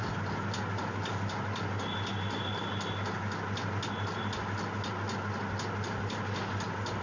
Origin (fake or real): real